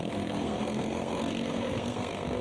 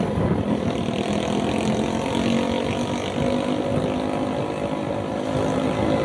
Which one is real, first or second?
second